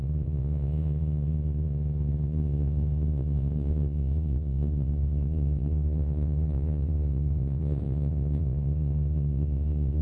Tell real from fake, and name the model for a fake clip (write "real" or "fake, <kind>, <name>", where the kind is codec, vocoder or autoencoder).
fake, vocoder, Vocos